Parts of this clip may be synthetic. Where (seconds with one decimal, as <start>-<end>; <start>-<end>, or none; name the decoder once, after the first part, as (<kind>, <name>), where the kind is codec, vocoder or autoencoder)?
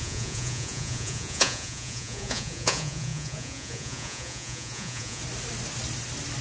0.0-5.2 (vocoder, Vocos)